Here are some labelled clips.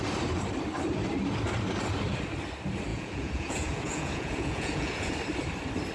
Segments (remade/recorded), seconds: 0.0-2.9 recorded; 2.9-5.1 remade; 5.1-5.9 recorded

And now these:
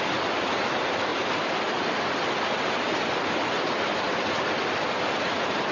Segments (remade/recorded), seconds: 0.0-5.7 recorded

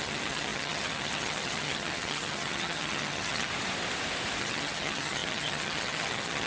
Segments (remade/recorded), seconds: 0.0-3.5 remade; 3.5-4.4 recorded; 4.4-6.5 remade

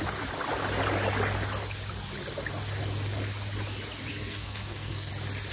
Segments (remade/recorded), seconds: 0.0-4.1 recorded; 4.1-5.1 remade; 5.1-5.5 recorded

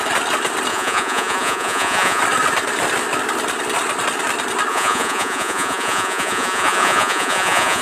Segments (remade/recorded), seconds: 0.0-0.7 recorded; 0.7-2.2 remade; 2.2-4.7 recorded; 4.7-7.8 remade

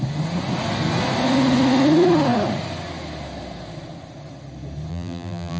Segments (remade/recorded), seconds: 0.0-4.9 recorded; 4.9-5.6 remade

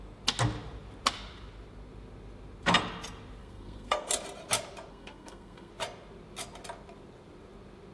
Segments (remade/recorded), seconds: 0.0-3.4 recorded; 3.4-4.1 remade; 4.1-4.9 recorded; 4.9-5.7 remade; 5.7-7.9 recorded

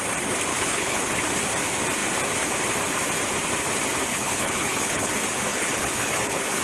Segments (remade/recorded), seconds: 0.0-0.5 recorded; 0.5-1.2 remade; 1.2-4.1 recorded; 4.1-5.1 remade; 5.1-5.5 recorded; 5.5-6.6 remade